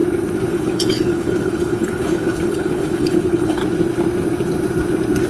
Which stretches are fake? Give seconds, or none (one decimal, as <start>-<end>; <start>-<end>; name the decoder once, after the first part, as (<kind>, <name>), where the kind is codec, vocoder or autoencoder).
0.5-3.6 (codec, HILCodec)